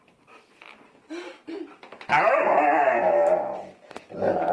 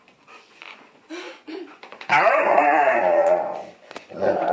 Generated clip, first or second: second